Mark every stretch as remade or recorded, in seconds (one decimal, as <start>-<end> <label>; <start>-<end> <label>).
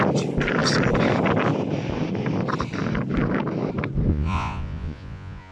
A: 0.0-4.1 recorded; 4.1-5.5 remade